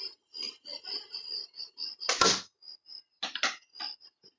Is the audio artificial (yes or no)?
no